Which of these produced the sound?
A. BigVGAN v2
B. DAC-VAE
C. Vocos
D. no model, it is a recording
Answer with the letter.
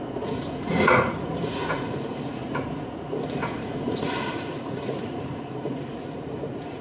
C